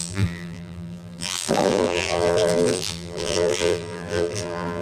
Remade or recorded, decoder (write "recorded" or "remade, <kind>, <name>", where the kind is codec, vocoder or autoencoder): remade, vocoder, BigVGAN v2